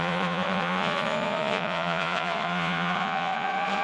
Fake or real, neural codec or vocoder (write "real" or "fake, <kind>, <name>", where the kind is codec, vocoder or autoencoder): fake, vocoder, Vocos